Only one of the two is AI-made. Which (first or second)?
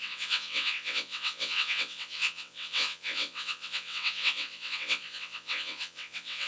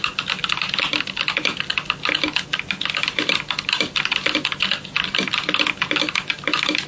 first